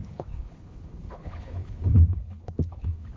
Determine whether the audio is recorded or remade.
remade